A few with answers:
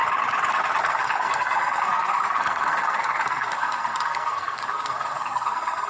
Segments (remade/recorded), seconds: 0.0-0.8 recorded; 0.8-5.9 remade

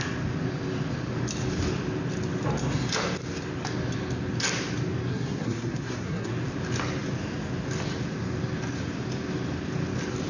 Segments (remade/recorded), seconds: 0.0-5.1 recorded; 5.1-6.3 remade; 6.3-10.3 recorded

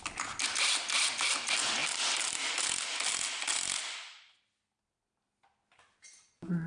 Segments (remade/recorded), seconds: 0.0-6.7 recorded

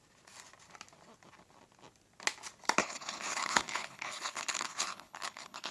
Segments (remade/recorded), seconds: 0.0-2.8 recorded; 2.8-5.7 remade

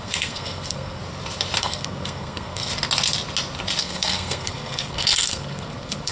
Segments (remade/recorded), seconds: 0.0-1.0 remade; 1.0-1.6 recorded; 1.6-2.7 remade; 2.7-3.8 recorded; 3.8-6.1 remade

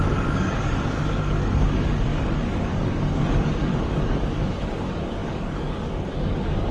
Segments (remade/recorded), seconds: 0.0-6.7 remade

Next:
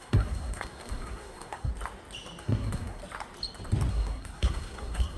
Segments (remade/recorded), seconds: 0.0-1.7 remade; 1.7-2.4 recorded; 2.4-3.0 remade; 3.0-3.9 recorded; 3.9-5.2 remade

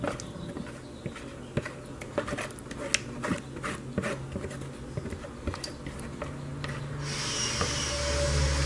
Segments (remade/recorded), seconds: 0.0-8.7 recorded